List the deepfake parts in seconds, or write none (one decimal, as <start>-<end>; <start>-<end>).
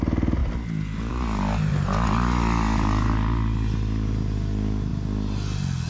none